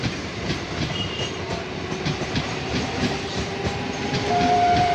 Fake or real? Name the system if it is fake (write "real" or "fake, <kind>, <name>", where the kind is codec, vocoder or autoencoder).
fake, vocoder, BigVGAN v2